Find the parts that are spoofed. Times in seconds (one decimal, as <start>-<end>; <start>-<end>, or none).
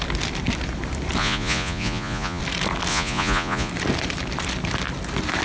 1.2-2.4; 2.9-3.7